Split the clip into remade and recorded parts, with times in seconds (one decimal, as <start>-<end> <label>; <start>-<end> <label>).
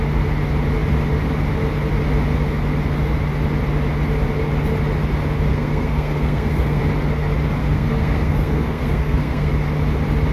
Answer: 0.0-5.5 recorded; 5.5-6.8 remade; 6.8-7.6 recorded; 7.6-9.5 remade; 9.5-10.3 recorded